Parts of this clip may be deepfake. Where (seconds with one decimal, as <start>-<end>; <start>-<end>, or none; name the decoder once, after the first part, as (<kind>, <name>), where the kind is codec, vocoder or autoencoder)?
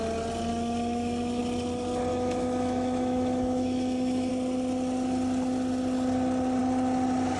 0.5-1.4 (autoencoder, DAC-VAE); 2.1-4.3